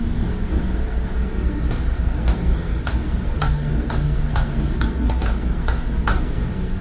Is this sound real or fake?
fake